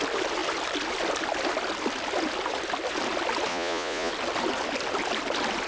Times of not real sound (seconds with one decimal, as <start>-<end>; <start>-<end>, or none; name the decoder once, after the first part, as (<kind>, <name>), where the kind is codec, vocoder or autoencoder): 3.5-4.1 (vocoder, Vocos)